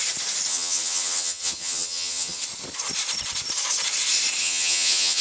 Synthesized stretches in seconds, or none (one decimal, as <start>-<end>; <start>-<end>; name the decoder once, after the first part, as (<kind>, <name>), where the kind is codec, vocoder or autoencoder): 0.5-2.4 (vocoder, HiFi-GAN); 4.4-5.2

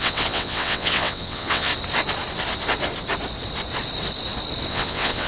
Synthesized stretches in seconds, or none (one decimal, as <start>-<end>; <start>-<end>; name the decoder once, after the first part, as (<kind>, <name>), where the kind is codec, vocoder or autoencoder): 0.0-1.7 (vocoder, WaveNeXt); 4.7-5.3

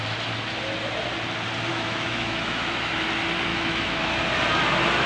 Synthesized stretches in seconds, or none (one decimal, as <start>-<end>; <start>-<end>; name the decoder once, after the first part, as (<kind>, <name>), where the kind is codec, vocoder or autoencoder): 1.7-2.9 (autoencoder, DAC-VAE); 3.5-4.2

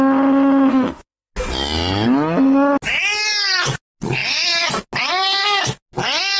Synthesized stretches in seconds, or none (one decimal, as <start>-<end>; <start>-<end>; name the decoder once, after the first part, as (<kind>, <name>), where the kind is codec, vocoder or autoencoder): 0.7-1.3 (autoencoder, DAC-VAE)